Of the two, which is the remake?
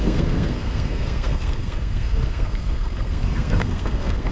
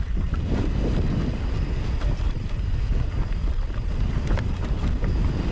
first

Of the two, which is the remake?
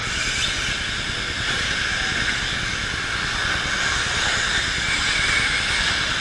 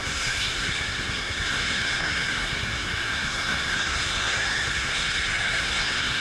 second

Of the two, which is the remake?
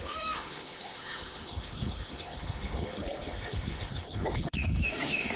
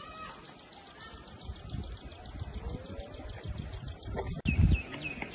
first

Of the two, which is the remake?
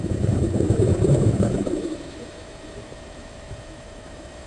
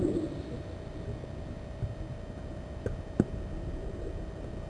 first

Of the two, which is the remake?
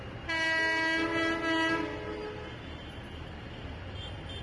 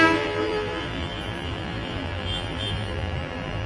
second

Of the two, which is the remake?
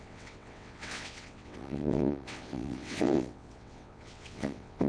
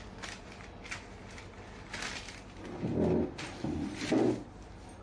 first